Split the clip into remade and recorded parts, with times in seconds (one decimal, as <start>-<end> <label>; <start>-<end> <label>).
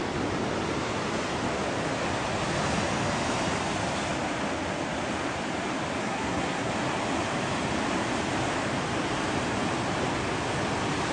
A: 0.0-6.0 recorded; 6.0-6.7 remade; 6.7-11.1 recorded